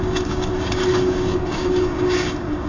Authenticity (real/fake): fake